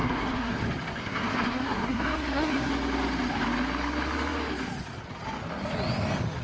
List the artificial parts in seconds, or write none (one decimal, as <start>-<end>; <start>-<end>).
0.0-0.6; 1.0-2.7